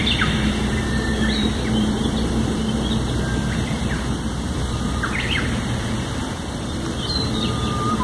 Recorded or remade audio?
remade